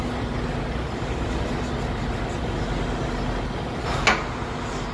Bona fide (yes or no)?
yes